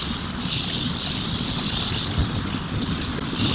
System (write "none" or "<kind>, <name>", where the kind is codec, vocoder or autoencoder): none